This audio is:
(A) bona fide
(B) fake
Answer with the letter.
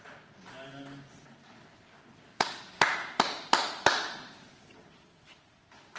A